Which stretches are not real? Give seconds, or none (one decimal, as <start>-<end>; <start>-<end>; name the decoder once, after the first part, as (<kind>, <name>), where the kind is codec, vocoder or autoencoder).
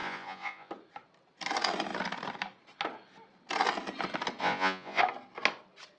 0.0-0.7 (vocoder, Vocos); 4.4-5.0